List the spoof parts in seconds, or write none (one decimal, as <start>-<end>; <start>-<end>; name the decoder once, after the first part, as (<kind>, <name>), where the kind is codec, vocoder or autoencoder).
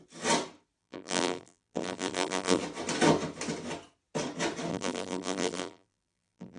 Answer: 0.8-2.6 (vocoder, BigVGAN v2); 4.7-6.6